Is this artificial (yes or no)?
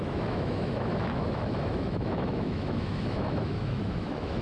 yes